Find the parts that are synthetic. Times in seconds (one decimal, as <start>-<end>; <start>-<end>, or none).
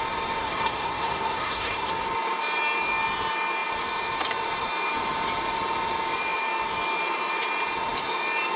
0.4-1.9